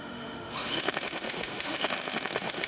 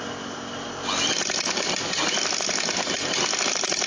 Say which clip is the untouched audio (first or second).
second